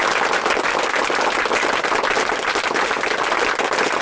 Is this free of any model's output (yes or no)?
yes